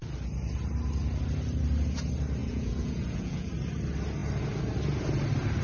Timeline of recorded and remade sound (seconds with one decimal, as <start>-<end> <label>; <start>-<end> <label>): 0.0-2.4 recorded; 2.4-3.5 remade; 3.5-5.6 recorded